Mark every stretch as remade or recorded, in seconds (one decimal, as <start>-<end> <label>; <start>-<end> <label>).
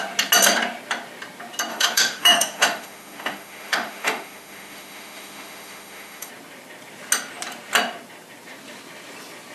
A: 0.0-1.7 recorded; 1.7-6.3 remade; 6.3-9.5 recorded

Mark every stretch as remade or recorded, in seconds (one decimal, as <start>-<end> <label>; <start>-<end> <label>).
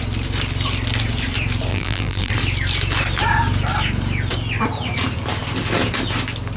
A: 0.0-1.7 recorded; 1.7-2.3 remade; 2.3-6.6 recorded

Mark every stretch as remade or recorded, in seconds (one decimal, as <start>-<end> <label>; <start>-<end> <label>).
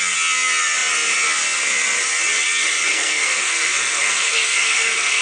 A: 0.0-2.9 recorded; 2.9-5.2 remade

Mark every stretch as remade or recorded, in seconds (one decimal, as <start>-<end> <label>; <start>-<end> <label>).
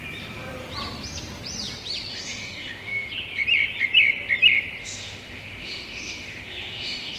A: 0.0-2.1 recorded; 2.1-3.1 remade; 3.1-4.8 recorded; 4.8-7.2 remade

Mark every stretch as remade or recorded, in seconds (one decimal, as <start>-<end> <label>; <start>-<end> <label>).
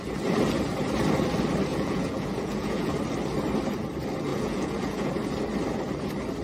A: 0.0-1.7 recorded; 1.7-2.9 remade; 2.9-4.3 recorded; 4.3-5.1 remade; 5.1-6.4 recorded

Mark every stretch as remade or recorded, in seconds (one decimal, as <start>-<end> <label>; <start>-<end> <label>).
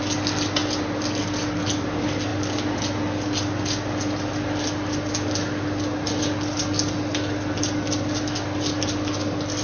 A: 0.0-9.6 recorded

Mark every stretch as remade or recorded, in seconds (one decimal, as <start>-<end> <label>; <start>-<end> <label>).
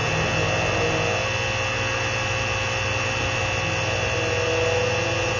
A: 0.0-5.4 recorded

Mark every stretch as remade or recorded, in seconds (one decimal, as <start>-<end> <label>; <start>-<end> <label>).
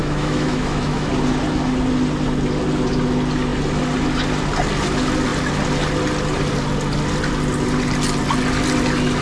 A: 0.0-1.1 remade; 1.1-9.2 recorded